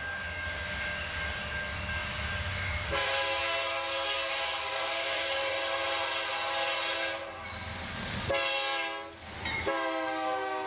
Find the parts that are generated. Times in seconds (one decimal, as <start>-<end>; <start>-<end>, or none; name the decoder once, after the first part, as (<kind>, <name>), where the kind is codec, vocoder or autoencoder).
0.0-5.5 (codec, DAC); 9.5-10.7

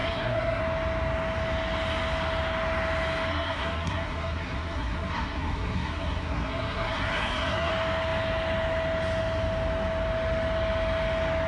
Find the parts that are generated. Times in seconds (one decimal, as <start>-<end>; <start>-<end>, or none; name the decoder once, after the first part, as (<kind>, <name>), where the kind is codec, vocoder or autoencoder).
0.0-0.6 (codec, SNAC); 3.3-7.7

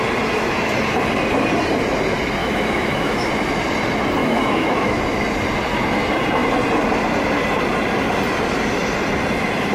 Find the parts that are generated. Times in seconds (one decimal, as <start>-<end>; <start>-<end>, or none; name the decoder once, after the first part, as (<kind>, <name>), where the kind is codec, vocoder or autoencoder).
2.4-3.3 (autoencoder, DAC-VAE); 4.2-5.0